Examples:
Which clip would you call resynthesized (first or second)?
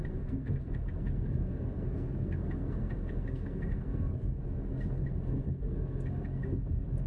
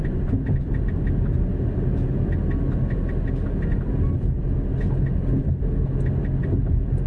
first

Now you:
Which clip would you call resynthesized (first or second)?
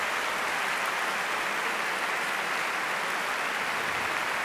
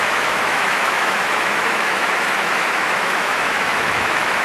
second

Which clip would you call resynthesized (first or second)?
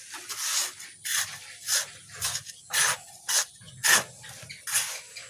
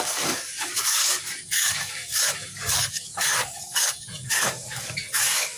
second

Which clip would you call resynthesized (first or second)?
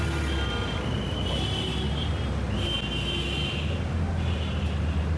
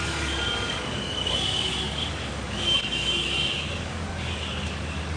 second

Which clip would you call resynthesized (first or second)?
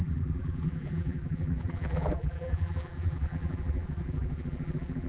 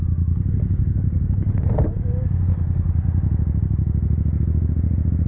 first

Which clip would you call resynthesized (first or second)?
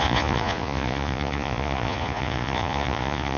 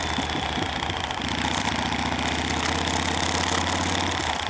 first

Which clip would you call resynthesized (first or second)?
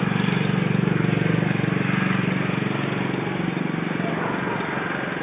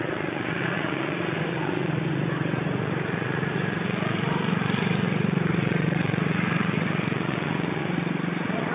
second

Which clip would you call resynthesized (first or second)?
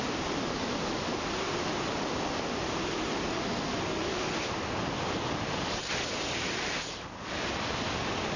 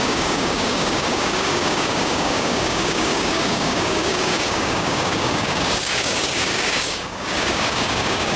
second